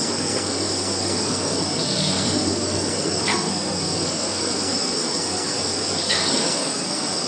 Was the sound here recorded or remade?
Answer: remade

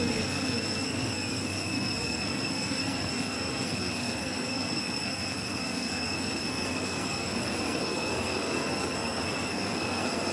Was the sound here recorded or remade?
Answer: remade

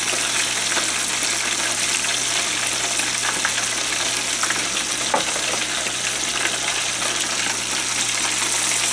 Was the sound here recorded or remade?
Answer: recorded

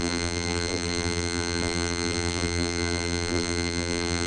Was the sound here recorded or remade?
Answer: remade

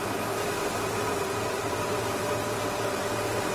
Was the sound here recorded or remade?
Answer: recorded